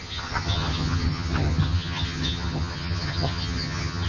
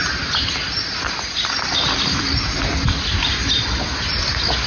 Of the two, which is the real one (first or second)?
second